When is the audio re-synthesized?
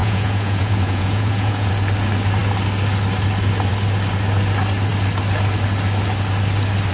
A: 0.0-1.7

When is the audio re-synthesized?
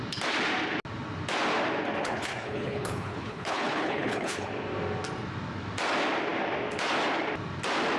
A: 2.0-4.5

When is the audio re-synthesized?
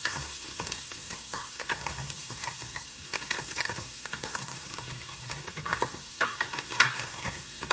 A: 0.0-7.7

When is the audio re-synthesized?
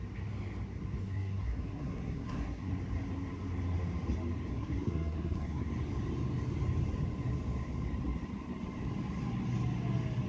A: 1.0-2.7; 4.5-5.7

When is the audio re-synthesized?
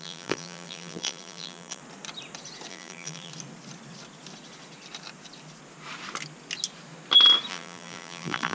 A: 0.0-1.8; 2.7-3.3; 7.5-8.5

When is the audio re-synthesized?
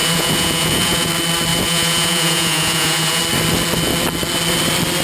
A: 0.0-1.1; 1.5-3.2